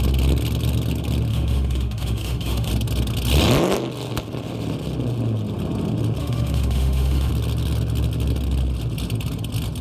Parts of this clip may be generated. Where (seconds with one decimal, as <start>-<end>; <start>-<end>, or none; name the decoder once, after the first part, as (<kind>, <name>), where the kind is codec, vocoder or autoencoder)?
1.3-2.7 (autoencoder, DAC-VAE); 6.2-7.3